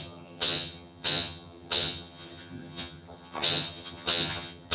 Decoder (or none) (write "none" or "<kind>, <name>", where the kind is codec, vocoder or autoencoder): vocoder, HiFi-GAN